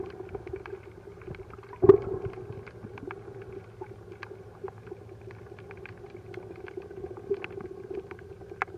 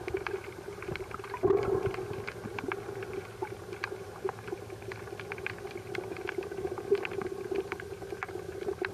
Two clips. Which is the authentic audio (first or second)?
first